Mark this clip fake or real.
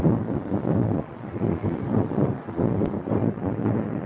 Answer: fake